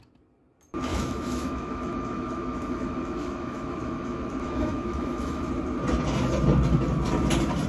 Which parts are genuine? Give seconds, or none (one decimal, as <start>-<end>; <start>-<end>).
0.0-0.9; 5.5-7.7